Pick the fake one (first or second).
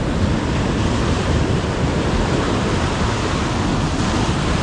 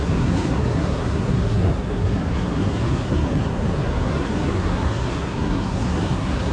second